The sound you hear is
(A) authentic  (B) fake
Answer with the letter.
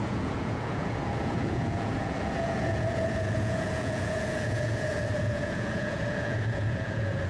B